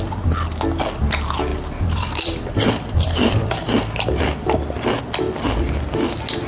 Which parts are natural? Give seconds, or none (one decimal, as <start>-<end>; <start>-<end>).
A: 0.0-1.5; 5.0-6.5